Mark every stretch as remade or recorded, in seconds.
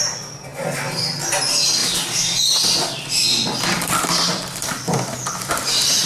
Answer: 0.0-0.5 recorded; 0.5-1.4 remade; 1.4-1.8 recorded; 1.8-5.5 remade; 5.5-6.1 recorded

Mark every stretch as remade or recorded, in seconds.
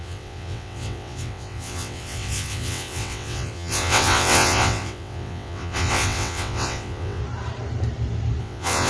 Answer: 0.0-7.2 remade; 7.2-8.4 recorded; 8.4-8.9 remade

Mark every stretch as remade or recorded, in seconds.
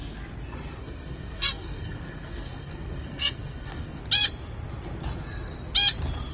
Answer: 0.0-0.8 recorded; 0.8-4.0 remade; 4.0-6.3 recorded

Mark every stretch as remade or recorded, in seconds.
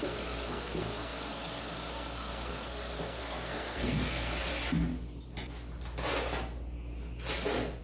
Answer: 0.0-4.5 remade; 4.5-7.8 recorded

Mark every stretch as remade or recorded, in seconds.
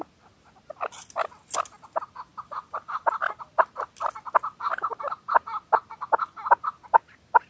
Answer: 0.0-2.3 recorded; 2.3-3.1 remade; 3.1-7.5 recorded